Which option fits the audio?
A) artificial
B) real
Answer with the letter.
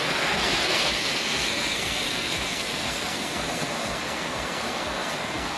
A